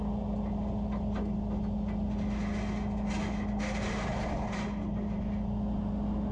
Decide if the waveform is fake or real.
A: real